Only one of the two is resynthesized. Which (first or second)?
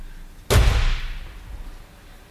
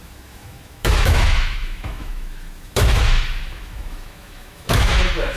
second